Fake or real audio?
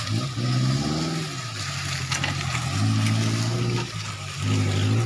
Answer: real